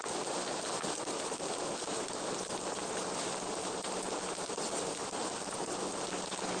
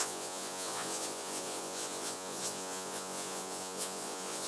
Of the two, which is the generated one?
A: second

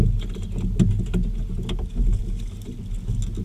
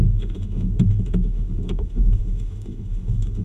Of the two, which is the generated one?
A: second